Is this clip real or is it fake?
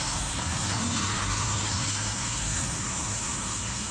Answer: fake